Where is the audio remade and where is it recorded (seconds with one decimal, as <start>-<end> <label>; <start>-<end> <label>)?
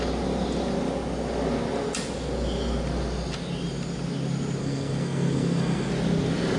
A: 0.0-4.6 recorded; 4.6-5.9 remade; 5.9-6.6 recorded